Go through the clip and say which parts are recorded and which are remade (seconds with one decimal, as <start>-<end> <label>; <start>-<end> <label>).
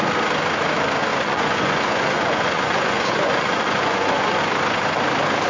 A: 0.0-1.1 recorded; 1.1-4.4 remade; 4.4-5.5 recorded